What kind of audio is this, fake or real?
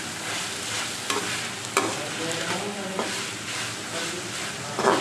real